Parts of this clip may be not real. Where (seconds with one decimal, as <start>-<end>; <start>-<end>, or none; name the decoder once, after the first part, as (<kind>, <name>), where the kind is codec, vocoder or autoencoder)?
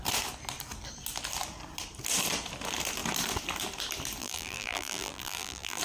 4.2-5.8 (vocoder, BigVGAN v2)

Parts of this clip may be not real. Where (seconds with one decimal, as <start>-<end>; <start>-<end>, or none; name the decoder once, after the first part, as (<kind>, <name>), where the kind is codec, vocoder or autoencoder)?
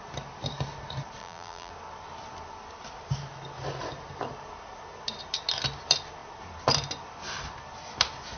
1.2-1.7 (vocoder, BigVGAN v2)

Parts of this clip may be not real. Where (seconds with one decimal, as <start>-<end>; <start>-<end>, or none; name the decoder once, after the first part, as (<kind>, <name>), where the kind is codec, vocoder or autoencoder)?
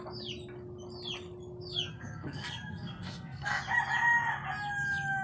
1.9-3.6 (codec, SNAC)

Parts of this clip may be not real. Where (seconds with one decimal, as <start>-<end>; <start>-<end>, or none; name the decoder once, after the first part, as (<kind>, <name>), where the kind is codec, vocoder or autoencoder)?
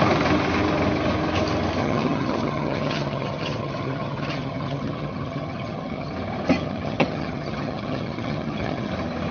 1.8-6.1 (vocoder, HiFi-GAN); 6.6-8.9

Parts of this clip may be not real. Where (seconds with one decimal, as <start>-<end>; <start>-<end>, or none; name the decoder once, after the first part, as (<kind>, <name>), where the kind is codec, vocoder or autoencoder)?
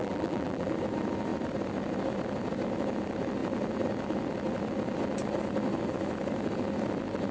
0.0-0.7 (vocoder, BigVGAN v2)